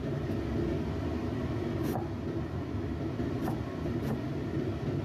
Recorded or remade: recorded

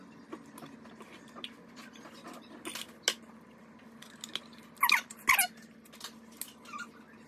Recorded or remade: recorded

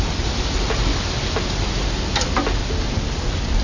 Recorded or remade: recorded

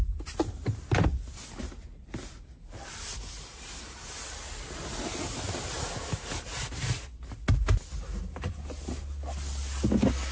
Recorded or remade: recorded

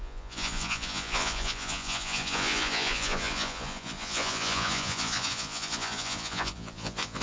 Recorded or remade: remade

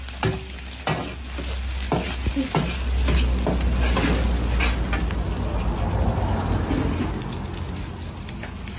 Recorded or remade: recorded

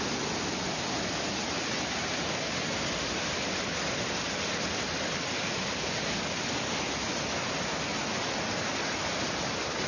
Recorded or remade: recorded